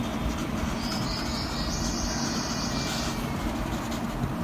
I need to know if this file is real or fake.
real